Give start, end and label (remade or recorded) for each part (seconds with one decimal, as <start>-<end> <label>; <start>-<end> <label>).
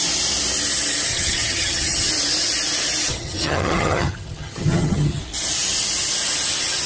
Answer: 0.0-1.1 recorded; 1.1-2.1 remade; 2.1-3.1 recorded; 3.1-5.2 remade; 5.2-6.9 recorded